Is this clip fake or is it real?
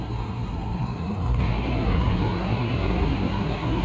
fake